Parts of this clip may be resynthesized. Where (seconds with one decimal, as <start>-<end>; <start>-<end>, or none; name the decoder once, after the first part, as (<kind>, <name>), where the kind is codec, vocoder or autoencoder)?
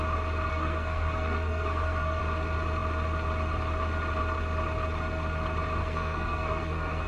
0.5-2.2 (codec, SNAC); 5.8-7.1